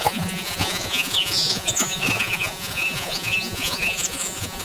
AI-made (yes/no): yes